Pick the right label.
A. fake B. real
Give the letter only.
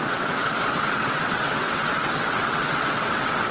A